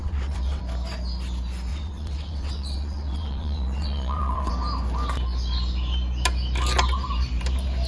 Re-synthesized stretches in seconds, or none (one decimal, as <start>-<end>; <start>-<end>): 0.0-0.6; 1.7-4.5